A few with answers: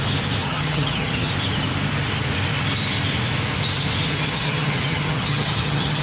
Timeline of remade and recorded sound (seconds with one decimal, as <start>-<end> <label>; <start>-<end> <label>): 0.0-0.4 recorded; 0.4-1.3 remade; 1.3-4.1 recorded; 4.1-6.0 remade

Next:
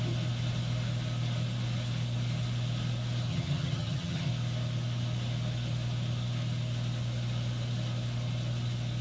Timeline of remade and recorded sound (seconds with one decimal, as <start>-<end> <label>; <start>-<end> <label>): 0.0-3.3 recorded; 3.3-4.3 remade; 4.3-9.0 recorded

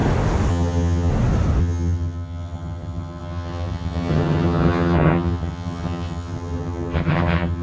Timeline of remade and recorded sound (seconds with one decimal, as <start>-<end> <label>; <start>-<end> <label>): 0.0-0.5 recorded; 0.5-1.1 remade; 1.1-1.6 recorded; 1.6-7.6 remade